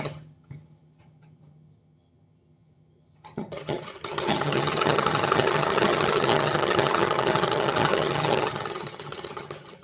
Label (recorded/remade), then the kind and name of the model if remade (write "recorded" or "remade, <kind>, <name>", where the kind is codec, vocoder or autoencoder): remade, vocoder, HiFi-GAN